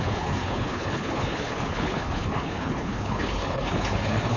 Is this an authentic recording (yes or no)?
no